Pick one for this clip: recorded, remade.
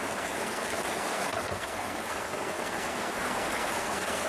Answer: remade